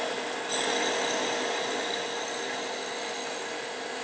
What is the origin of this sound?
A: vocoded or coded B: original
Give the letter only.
B